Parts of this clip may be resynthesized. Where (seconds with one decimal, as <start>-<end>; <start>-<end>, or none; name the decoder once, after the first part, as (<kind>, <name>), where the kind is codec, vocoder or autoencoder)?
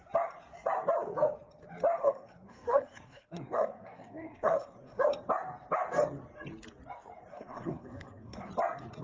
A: 2.0-5.0 (codec, SNAC); 7.3-8.5